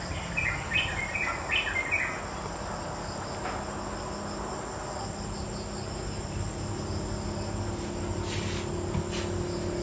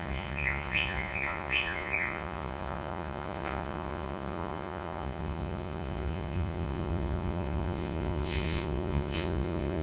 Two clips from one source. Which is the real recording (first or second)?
first